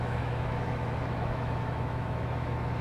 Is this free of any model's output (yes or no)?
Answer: no